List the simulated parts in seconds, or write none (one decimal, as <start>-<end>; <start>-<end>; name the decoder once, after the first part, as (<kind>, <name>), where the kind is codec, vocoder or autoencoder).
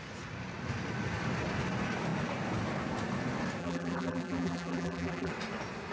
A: 3.6-5.3 (vocoder, BigVGAN v2)